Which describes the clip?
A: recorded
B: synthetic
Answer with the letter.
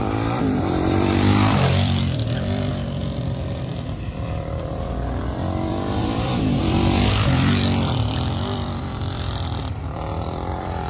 B